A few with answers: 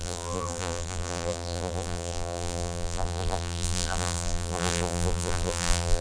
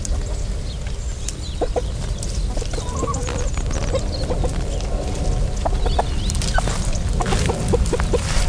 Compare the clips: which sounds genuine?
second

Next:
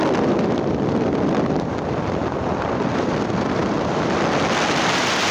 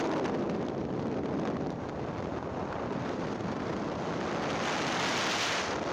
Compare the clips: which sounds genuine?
second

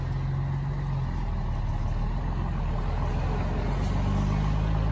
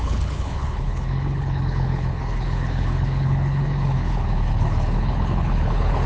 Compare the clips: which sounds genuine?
first